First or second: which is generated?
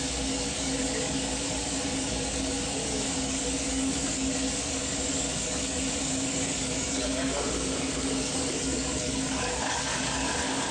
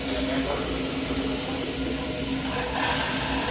first